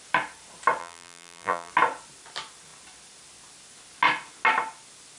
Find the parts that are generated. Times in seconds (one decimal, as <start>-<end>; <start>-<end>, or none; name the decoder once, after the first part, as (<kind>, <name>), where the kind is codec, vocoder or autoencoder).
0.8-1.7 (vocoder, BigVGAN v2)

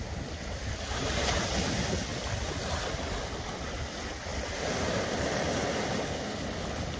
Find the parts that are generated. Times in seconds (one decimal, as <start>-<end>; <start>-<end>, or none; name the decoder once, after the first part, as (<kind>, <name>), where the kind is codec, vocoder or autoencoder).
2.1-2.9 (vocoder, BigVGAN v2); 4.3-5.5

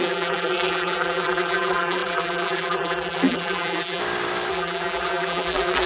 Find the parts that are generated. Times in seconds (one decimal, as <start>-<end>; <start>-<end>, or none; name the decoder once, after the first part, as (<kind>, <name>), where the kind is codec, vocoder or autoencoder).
0.0-4.0 (vocoder, BigVGAN v2); 4.5-5.9

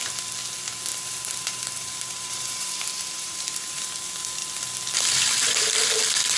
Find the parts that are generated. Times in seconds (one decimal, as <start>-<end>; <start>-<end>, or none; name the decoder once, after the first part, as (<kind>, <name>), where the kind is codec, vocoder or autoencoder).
0.9-3.8 (vocoder, BigVGAN v2)